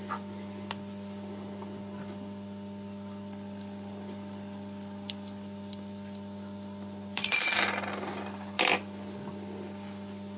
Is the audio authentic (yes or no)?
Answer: yes